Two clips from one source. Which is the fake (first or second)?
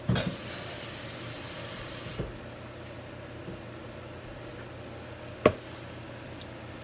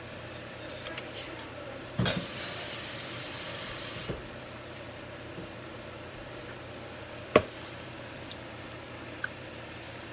second